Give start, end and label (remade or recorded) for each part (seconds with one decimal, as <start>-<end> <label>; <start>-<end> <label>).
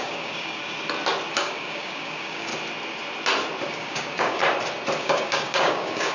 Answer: 0.0-0.6 remade; 0.6-1.3 recorded; 1.3-2.5 remade; 2.5-3.7 recorded; 3.7-4.4 remade; 4.4-5.0 recorded; 5.0-6.1 remade